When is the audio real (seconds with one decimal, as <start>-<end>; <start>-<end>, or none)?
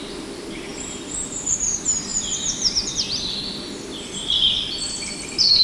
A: 0.0-5.6